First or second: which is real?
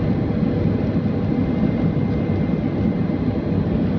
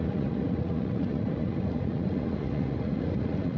first